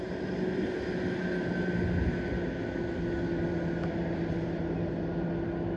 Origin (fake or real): real